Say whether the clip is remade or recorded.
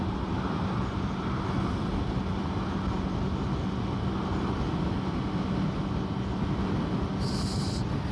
recorded